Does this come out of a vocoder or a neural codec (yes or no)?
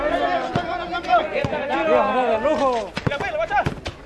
no